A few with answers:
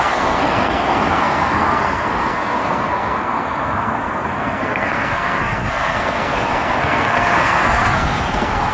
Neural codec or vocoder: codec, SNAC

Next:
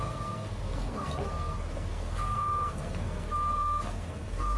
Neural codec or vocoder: codec, SNAC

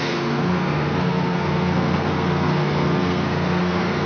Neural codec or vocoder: codec, SNAC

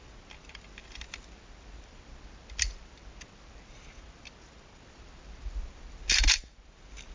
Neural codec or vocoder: none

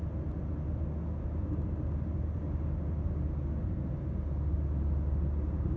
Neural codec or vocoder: none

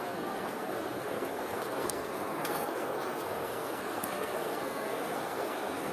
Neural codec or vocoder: codec, SNAC